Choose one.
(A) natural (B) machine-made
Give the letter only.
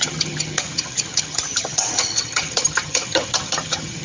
B